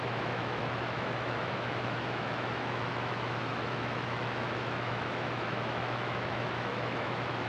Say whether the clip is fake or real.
fake